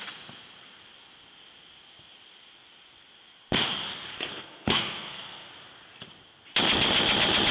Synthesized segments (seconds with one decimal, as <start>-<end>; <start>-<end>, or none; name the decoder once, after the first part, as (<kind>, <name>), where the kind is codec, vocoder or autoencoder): 4.3-5.5 (codec, SNAC)